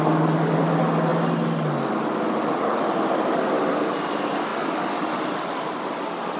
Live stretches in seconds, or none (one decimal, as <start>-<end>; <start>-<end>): 0.0-6.4